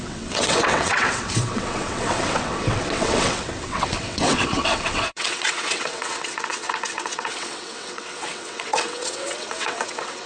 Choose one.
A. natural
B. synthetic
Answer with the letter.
B